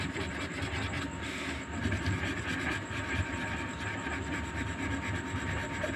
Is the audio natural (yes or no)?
yes